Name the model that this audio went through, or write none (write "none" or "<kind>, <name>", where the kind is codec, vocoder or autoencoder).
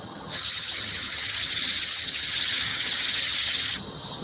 vocoder, HiFi-GAN